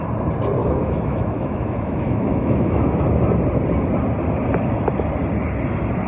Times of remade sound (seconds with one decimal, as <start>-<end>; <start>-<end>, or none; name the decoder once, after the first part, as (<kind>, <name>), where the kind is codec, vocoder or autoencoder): 0.6-3.0 (autoencoder, DAC-VAE)